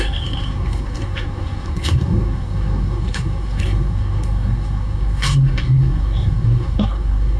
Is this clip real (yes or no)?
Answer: no